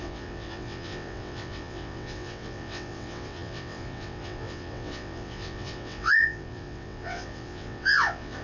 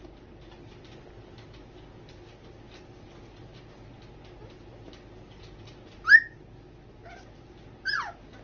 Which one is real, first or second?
second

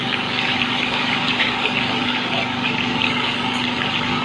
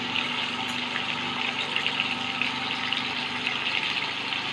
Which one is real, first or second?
second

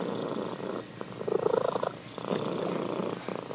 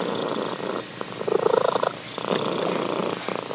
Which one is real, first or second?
first